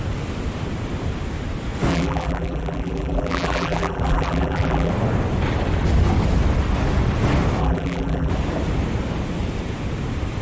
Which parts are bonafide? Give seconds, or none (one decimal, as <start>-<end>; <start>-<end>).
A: 0.0-1.9; 4.9-7.6; 8.3-10.4